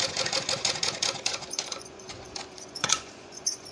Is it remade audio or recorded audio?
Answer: remade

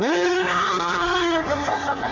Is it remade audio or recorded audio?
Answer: remade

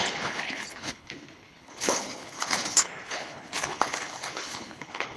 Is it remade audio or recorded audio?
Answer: remade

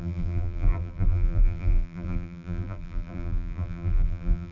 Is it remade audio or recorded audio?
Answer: remade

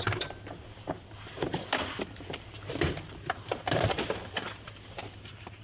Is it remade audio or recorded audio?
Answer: remade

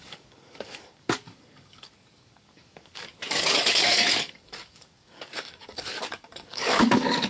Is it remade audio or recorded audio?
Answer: remade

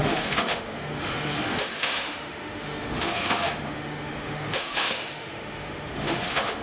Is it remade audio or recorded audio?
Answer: remade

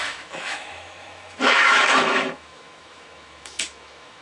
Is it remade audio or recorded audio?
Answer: remade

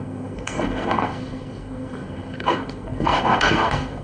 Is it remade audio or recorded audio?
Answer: remade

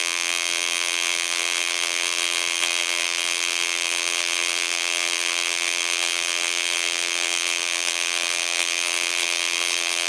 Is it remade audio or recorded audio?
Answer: remade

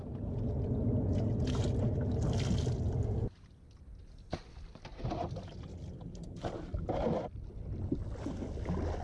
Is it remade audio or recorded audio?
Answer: recorded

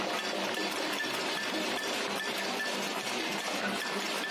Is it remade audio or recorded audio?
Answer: recorded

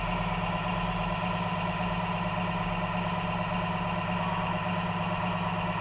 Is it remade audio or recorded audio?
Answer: recorded